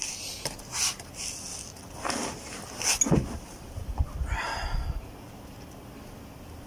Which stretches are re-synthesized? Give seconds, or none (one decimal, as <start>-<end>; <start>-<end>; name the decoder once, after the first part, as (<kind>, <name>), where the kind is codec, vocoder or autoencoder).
none